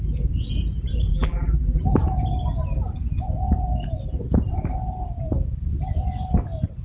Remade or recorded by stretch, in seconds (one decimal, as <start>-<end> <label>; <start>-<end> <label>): 0.0-1.1 recorded; 1.1-1.8 remade; 1.8-6.8 recorded